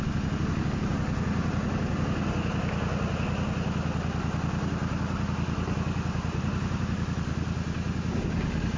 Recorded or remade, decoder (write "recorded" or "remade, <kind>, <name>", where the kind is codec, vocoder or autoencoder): recorded